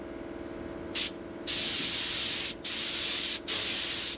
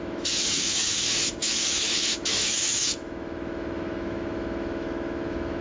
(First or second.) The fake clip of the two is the second